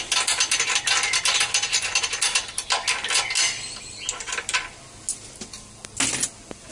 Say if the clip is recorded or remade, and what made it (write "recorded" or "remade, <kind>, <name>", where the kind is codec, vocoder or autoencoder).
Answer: recorded